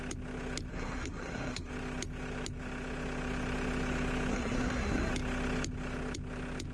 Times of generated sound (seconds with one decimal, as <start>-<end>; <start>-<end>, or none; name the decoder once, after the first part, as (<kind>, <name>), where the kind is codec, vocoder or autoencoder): 0.7-1.7 (codec, SNAC); 4.3-5.1